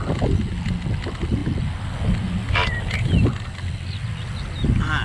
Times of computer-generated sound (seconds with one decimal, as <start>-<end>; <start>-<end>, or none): none